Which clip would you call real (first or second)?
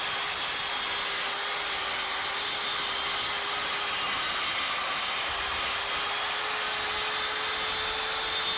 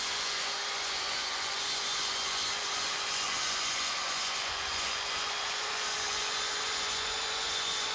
first